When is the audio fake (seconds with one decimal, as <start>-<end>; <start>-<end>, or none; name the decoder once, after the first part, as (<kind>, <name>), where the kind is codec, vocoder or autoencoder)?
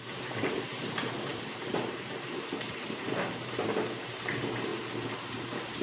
0.0-4.7 (vocoder, BigVGAN v2); 5.3-5.8